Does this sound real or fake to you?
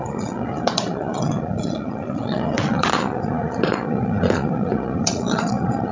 fake